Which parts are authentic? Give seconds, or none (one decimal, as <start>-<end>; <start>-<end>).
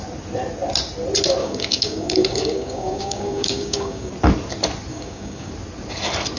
0.0-1.4; 4.1-4.9; 5.5-6.4